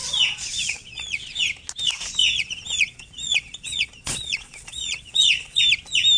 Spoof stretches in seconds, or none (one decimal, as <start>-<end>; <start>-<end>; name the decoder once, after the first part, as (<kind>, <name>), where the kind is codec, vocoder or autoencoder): 0.0-1.4 (vocoder, Vocos); 2.2-5.6